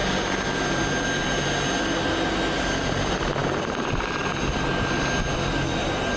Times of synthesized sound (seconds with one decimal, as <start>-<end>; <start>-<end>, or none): none